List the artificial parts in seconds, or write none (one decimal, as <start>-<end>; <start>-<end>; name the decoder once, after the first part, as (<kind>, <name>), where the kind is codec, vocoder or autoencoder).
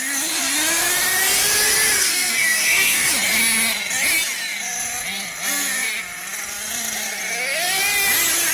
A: 2.0-3.1 (codec, SNAC)